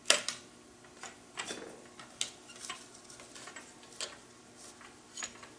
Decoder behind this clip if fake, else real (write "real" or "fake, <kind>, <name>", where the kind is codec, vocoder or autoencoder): real